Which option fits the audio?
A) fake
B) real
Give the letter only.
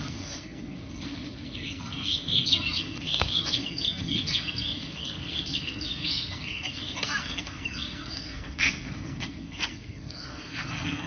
A